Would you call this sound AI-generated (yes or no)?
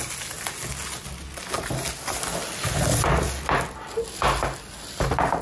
no